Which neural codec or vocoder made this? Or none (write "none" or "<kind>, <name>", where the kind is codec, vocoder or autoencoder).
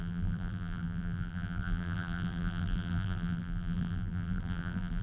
vocoder, BigVGAN v2